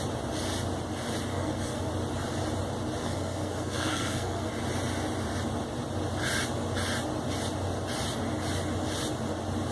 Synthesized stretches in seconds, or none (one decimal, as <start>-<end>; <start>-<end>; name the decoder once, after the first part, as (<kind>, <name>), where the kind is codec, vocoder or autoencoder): 1.3-1.9 (codec, SNAC); 3.0-4.5